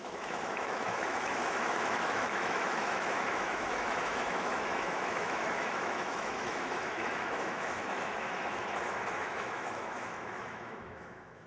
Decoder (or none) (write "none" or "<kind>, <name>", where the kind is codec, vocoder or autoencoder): autoencoder, DAC-VAE